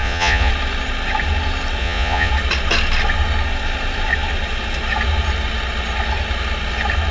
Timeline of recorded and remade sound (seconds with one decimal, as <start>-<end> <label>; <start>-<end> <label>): 0.0-0.5 remade; 0.5-1.8 recorded; 1.8-2.3 remade; 2.3-7.1 recorded